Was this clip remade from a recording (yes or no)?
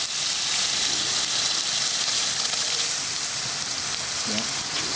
no